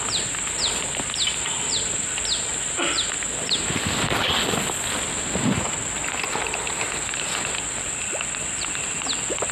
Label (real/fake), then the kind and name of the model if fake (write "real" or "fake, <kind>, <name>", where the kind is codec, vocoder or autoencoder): real